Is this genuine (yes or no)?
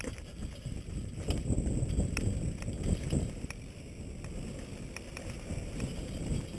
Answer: yes